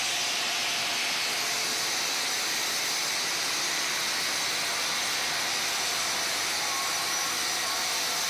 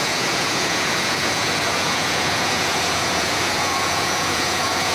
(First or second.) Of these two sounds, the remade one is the second